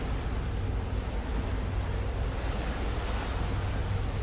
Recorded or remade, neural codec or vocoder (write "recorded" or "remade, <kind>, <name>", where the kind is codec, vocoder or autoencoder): recorded